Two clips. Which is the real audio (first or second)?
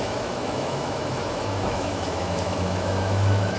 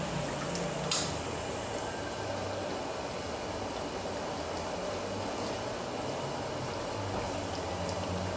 second